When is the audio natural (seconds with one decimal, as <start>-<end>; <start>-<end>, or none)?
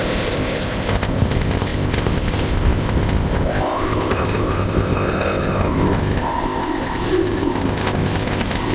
none